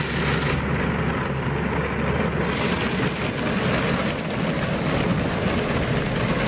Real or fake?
real